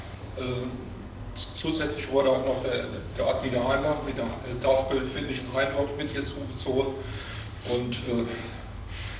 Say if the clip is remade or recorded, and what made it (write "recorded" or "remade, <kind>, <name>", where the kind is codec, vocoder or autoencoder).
remade, codec, DAC